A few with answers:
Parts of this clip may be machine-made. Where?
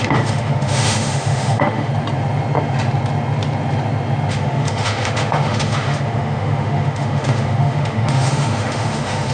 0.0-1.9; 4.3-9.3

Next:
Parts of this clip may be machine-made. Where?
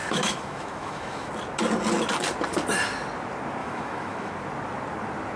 0.0-1.3; 3.6-4.3